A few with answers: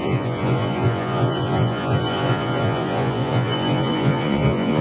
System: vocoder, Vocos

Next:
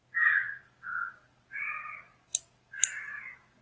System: none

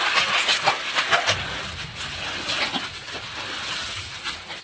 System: none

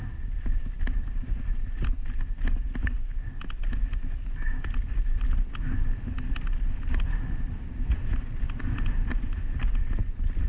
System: none